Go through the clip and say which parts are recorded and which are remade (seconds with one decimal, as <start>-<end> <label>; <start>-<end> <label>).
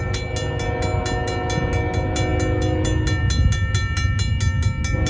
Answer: 0.0-5.1 recorded